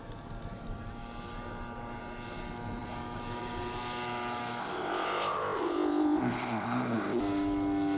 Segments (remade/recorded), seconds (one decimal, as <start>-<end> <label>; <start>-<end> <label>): 0.0-4.6 recorded; 4.6-7.2 remade; 7.2-8.0 recorded